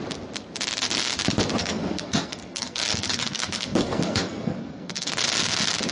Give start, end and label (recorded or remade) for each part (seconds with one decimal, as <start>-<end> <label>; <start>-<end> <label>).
0.0-1.6 recorded; 1.6-5.1 remade; 5.1-5.9 recorded